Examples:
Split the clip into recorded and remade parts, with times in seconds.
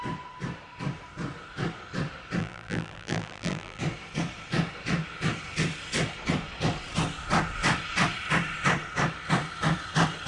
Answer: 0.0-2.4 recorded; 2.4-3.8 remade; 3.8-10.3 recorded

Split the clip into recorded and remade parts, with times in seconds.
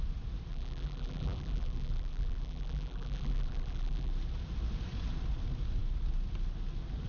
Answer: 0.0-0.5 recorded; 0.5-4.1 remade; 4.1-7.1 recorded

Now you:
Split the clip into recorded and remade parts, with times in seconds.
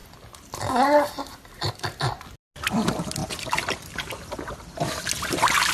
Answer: 0.0-5.7 recorded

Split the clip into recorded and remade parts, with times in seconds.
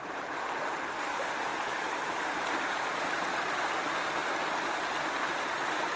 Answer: 0.0-1.5 recorded; 1.5-2.5 remade; 2.5-6.0 recorded